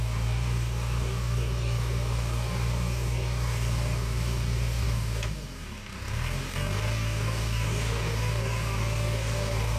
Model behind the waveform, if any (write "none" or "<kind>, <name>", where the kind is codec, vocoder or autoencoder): codec, DAC